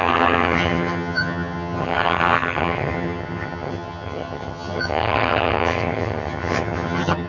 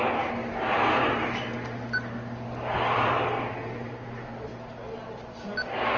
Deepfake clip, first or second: first